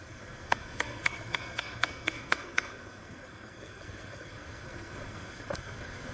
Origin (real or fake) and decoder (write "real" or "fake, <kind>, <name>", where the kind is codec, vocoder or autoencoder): fake, codec, SNAC